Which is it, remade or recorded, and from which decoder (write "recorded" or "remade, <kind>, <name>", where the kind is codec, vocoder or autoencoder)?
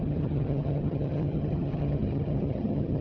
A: remade, vocoder, HiFi-GAN